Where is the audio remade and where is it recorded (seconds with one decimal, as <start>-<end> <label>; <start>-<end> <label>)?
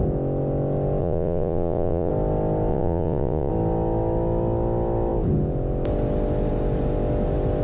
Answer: 0.0-1.0 recorded; 1.0-2.1 remade; 2.1-2.7 recorded; 2.7-3.5 remade; 3.5-7.6 recorded